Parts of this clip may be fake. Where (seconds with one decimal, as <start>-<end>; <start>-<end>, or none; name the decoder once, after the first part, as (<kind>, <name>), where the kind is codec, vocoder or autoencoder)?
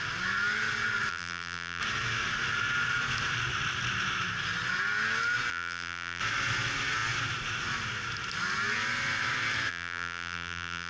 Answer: 1.1-1.8 (vocoder, BigVGAN v2); 5.5-6.2; 9.7-10.9